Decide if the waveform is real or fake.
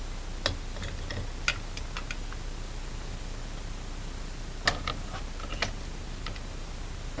real